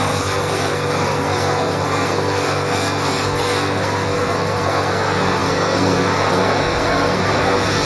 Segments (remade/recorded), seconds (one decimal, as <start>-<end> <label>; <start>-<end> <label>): 0.0-7.9 remade